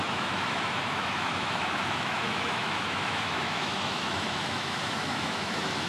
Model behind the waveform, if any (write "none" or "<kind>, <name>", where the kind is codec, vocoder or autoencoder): autoencoder, DAC-VAE